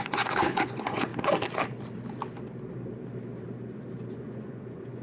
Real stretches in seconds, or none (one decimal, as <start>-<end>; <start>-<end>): 1.1-4.1